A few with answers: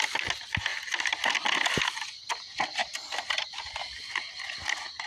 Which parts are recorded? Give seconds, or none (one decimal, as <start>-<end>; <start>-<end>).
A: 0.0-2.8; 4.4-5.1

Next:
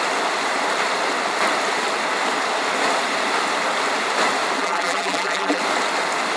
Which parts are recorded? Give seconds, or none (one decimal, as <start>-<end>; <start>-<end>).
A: 0.0-4.6; 5.6-6.4

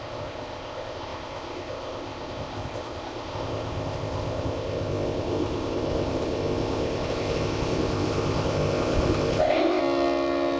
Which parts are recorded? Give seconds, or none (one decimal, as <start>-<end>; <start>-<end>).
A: 9.8-10.6